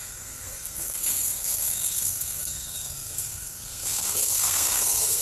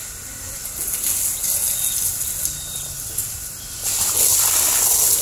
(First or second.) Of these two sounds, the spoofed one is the first